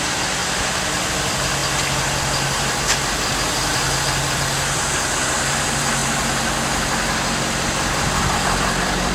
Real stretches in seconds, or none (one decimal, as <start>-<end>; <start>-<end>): 0.4-1.1; 1.6-4.0